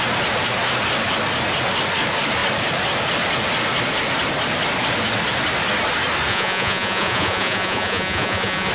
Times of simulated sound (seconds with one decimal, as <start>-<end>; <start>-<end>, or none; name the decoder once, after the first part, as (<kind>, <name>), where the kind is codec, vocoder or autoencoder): 6.3-8.7 (vocoder, Vocos)